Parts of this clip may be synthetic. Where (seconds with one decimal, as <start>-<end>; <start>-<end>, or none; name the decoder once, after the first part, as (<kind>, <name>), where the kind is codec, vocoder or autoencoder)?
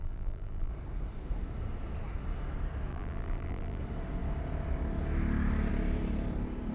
0.0-0.7 (vocoder, BigVGAN v2); 2.9-3.8